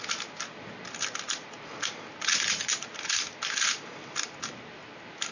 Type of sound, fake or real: real